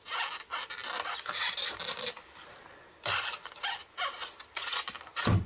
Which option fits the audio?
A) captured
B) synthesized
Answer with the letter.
B